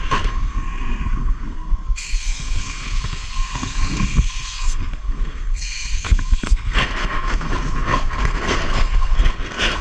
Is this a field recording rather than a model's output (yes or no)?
no